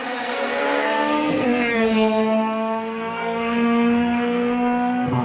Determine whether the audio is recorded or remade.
remade